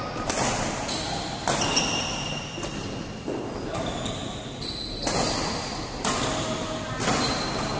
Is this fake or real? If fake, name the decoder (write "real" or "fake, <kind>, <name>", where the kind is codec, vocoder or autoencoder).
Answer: real